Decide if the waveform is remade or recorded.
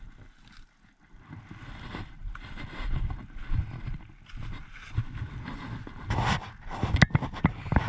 recorded